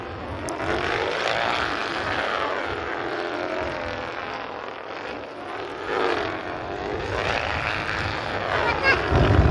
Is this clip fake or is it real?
real